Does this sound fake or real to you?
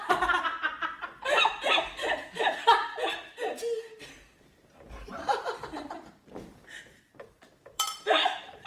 fake